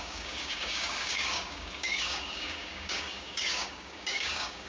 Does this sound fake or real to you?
fake